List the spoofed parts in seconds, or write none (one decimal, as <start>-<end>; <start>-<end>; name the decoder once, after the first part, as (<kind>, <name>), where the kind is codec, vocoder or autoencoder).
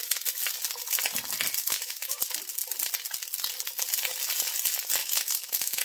1.6-2.2 (autoencoder, DAC-VAE); 5.0-5.8